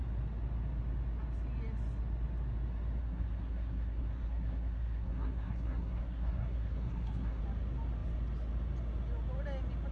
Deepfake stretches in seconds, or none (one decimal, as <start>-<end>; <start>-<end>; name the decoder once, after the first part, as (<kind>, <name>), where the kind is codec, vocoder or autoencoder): 3.0-7.4 (codec, SNAC)

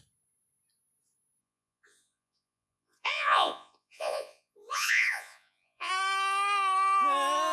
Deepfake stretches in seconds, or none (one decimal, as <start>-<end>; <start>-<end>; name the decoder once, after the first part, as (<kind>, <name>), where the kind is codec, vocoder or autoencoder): 1.4-5.9 (vocoder, Vocos)

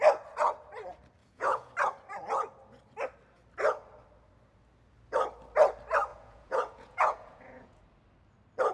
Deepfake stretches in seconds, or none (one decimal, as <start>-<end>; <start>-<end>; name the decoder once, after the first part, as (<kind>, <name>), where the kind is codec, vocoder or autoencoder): 1.2-1.7 (vocoder, Vocos); 6.1-7.8

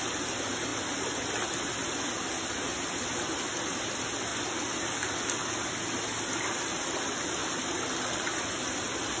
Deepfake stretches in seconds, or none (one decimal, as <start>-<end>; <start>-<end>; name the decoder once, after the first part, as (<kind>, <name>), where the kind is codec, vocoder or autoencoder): none

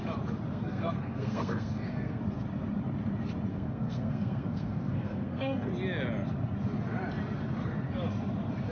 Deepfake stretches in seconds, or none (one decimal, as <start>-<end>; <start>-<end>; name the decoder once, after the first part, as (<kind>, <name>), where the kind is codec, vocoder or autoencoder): 0.5-2.2 (codec, SNAC); 3.5-5.7

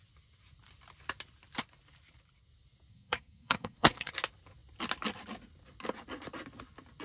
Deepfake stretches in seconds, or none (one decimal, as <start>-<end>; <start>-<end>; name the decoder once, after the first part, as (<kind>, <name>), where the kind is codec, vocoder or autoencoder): 2.9-4.1 (codec, SNAC)

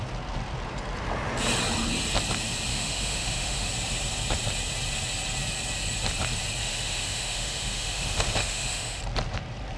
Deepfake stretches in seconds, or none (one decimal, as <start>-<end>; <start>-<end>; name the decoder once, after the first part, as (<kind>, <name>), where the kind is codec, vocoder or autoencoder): 2.7-3.7 (autoencoder, DAC-VAE); 6.6-9.0

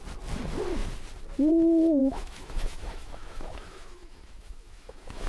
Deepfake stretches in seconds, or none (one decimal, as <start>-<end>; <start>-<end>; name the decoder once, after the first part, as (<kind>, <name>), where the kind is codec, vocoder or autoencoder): 2.0-5.3 (autoencoder, DAC-VAE)